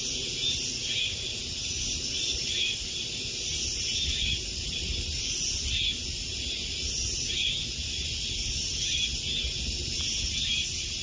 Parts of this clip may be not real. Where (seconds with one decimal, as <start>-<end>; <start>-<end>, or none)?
none